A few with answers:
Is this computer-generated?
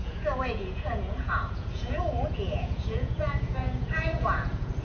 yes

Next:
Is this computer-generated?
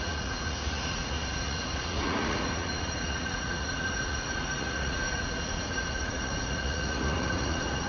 yes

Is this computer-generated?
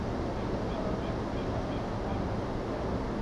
no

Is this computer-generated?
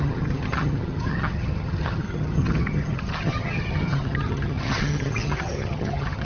yes